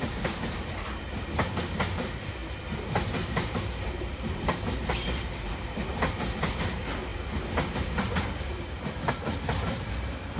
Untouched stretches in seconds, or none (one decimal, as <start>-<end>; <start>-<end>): 0.0-10.4